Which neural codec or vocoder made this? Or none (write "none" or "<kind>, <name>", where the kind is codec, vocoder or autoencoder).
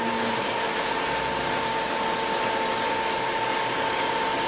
none